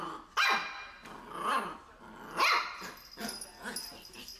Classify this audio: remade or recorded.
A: recorded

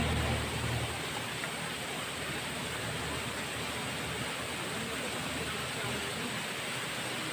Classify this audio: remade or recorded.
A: recorded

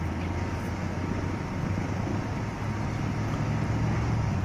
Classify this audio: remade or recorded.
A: recorded